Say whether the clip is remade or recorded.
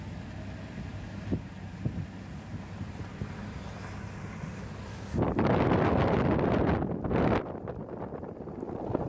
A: recorded